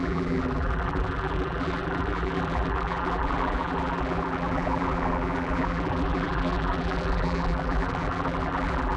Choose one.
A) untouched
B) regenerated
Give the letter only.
B